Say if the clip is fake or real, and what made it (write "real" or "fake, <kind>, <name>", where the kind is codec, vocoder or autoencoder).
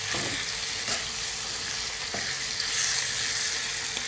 real